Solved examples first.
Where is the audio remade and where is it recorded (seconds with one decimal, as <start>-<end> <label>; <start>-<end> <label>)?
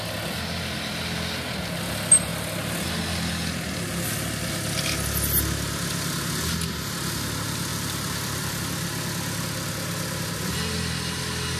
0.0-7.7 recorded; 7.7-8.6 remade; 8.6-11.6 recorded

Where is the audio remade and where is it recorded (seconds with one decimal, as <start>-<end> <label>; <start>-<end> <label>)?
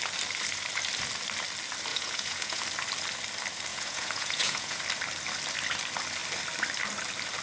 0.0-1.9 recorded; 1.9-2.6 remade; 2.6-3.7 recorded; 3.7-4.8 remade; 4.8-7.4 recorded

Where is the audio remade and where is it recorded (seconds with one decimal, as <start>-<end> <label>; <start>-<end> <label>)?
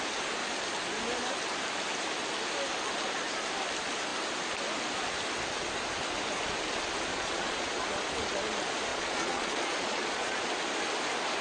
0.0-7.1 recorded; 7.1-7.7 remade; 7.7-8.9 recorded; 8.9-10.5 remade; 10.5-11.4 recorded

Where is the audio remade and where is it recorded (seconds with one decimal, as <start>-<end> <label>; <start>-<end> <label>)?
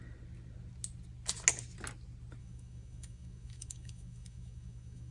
0.0-2.4 recorded; 2.4-5.1 remade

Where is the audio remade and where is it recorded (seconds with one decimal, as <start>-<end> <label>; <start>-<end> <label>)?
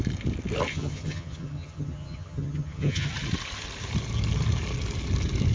0.0-0.7 recorded; 0.7-3.1 remade; 3.1-5.5 recorded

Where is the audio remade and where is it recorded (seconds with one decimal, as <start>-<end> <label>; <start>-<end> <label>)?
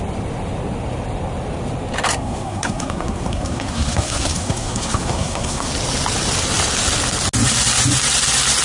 0.0-2.1 recorded; 2.1-5.7 remade; 5.7-8.6 recorded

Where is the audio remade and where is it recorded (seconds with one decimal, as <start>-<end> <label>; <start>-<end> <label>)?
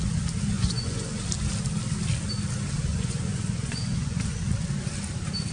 0.0-0.5 recorded; 0.5-1.2 remade; 1.2-2.9 recorded; 2.9-4.2 remade; 4.2-5.5 recorded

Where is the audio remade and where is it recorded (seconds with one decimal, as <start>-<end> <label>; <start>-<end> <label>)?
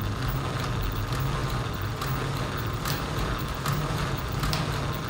0.0-1.4 recorded; 1.4-4.5 remade; 4.5-5.1 recorded